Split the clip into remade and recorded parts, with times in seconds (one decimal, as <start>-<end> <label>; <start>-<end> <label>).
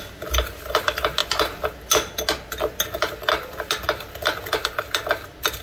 0.0-5.6 recorded